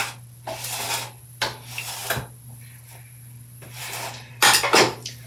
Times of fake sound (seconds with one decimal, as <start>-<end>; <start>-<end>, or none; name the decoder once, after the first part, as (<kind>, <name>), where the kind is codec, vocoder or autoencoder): none